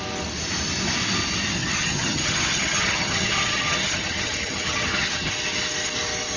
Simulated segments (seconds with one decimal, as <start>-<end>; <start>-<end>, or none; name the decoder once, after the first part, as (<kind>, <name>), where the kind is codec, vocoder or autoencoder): 1.6-5.3 (vocoder, HiFi-GAN)